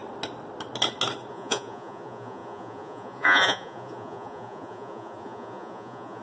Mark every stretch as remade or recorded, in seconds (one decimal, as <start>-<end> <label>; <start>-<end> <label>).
0.0-1.3 recorded; 1.3-6.2 remade